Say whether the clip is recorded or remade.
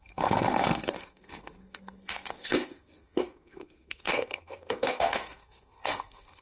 remade